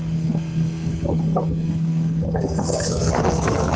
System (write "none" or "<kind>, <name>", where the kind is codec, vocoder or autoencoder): codec, SNAC